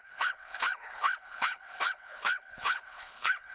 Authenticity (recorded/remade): remade